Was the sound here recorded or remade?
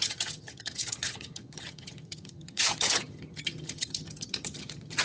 remade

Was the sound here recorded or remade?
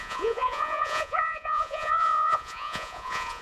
remade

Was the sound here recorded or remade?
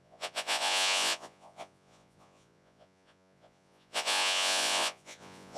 remade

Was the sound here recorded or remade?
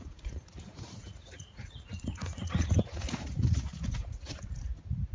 remade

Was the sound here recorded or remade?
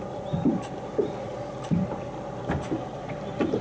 recorded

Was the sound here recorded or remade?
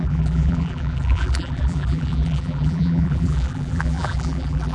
remade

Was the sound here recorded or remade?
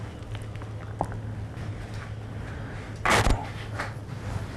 recorded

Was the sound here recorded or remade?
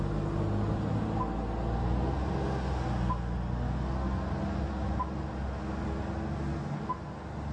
recorded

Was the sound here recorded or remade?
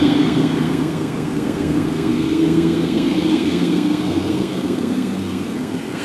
remade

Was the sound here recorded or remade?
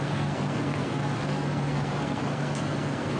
remade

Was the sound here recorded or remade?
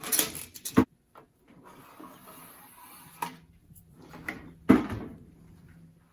recorded